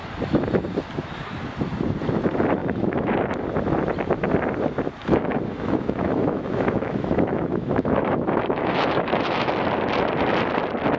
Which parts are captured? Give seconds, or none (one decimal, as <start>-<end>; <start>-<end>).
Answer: 0.0-2.6; 3.1-5.0; 9.5-11.0